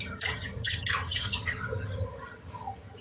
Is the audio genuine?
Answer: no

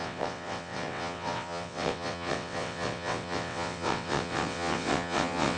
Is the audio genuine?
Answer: no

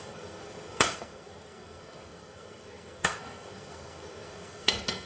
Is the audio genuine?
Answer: no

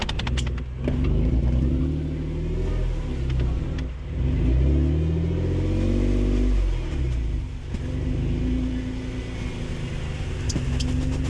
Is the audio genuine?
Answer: yes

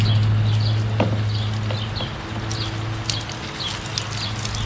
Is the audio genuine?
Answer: yes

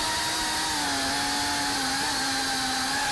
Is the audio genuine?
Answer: yes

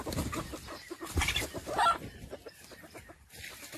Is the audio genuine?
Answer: no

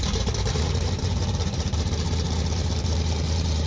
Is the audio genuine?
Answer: no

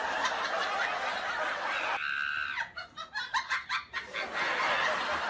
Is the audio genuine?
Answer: yes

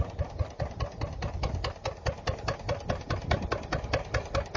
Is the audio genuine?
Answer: yes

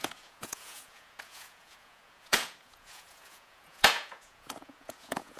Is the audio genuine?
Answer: no